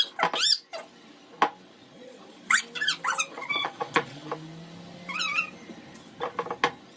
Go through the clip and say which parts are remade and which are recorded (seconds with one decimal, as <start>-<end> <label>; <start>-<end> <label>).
0.0-1.8 recorded; 1.8-2.6 remade; 2.6-3.3 recorded; 3.3-4.3 remade; 4.3-7.0 recorded